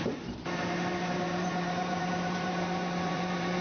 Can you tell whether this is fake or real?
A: fake